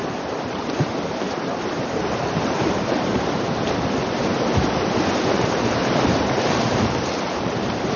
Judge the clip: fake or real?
fake